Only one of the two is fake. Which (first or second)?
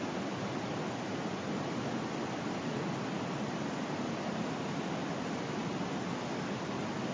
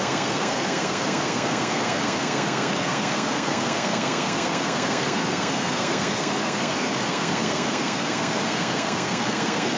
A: second